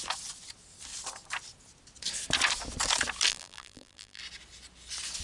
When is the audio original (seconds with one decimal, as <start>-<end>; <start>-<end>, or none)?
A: 0.0-3.3; 4.2-5.2